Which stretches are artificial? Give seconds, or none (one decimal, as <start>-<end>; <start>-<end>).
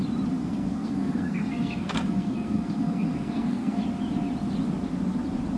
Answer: 0.4-3.8